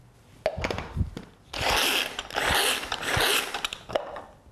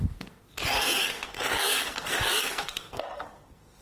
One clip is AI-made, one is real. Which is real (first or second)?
first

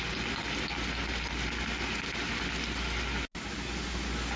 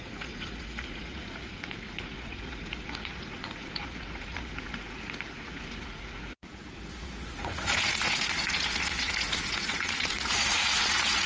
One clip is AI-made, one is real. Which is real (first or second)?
first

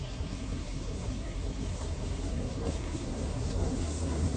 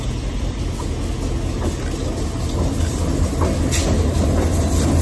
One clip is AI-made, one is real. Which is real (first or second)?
second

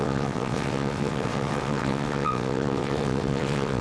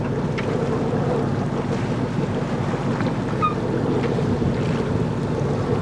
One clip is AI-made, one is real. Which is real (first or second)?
second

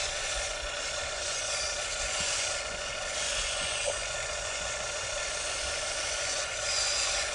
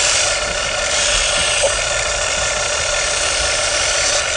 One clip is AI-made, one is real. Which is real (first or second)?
second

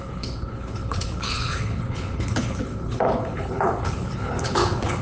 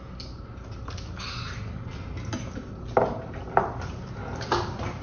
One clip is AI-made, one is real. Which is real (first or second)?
second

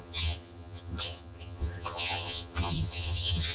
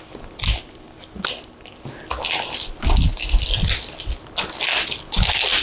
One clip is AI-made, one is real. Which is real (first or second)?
second